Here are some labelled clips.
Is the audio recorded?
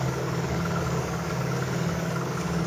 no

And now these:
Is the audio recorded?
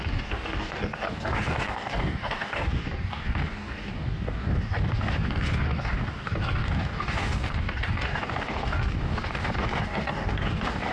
no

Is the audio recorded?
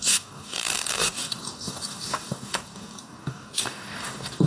no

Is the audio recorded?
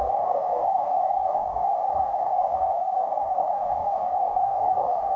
no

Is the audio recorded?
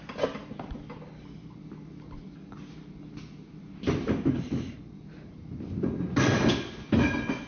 yes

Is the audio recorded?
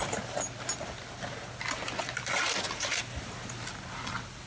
yes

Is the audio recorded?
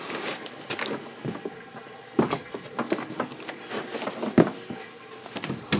yes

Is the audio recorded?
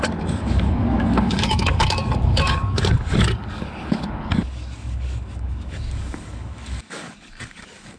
no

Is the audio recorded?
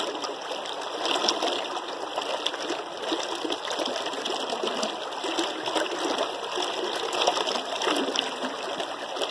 yes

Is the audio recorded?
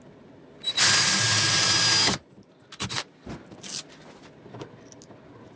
yes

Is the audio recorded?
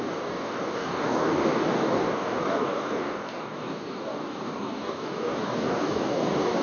no